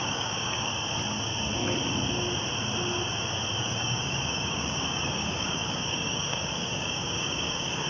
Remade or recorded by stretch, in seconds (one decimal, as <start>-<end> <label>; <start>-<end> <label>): 0.0-0.7 remade; 0.7-3.6 recorded; 3.6-7.9 remade